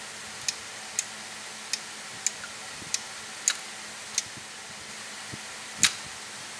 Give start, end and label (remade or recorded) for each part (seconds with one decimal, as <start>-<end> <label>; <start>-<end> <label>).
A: 0.0-6.6 recorded